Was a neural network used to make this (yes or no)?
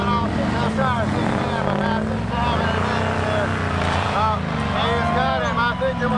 no